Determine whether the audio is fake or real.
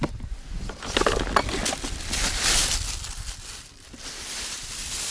real